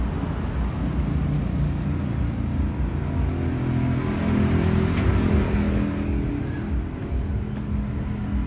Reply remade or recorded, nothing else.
recorded